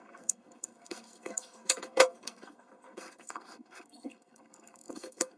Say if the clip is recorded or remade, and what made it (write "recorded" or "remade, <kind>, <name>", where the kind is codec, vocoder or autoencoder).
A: remade, codec, SNAC